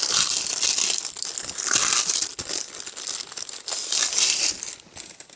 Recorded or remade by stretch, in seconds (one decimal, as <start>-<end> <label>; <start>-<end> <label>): 0.0-5.4 recorded